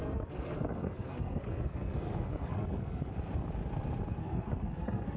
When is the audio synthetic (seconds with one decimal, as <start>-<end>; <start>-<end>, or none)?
0.0-3.1; 4.2-5.2